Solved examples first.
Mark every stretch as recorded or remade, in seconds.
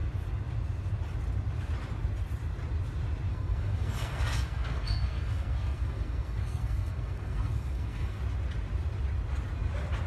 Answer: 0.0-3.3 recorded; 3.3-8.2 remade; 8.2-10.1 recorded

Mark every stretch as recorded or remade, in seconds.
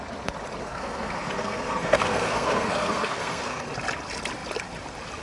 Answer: 0.0-0.6 recorded; 0.6-3.7 remade; 3.7-5.2 recorded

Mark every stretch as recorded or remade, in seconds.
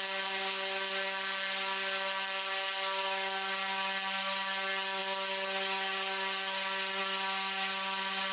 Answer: 0.0-8.3 recorded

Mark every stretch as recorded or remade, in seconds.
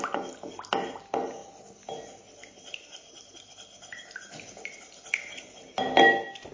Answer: 0.0-6.5 recorded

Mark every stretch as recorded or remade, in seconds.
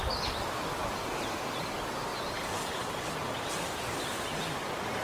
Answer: 0.0-5.0 recorded